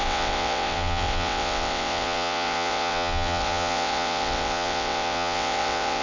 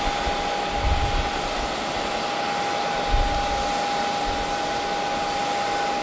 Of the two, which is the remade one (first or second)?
first